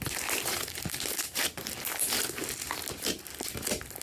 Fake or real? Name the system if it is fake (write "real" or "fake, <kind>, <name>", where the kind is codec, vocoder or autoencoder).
real